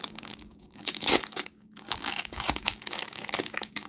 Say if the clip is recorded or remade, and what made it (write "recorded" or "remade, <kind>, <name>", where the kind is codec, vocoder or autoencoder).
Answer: remade, codec, DAC